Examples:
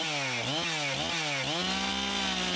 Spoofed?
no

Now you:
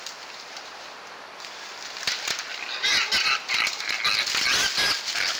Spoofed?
no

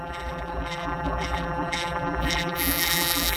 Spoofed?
yes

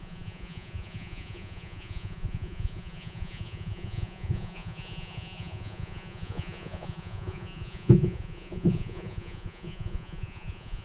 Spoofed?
yes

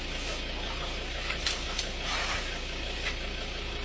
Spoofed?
no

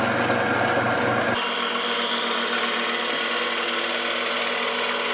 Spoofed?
no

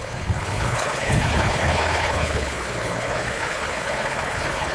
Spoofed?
yes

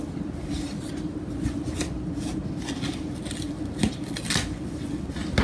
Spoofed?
no